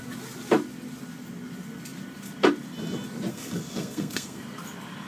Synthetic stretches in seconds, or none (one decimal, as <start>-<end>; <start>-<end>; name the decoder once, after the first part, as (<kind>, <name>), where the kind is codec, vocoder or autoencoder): 3.3-4.4 (codec, SNAC)